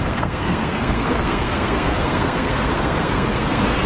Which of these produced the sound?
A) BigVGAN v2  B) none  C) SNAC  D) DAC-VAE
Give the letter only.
C